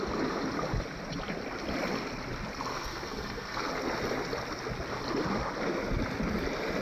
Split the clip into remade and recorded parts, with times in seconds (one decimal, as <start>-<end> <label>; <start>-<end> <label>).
0.0-2.7 recorded; 2.7-3.7 remade; 3.7-6.8 recorded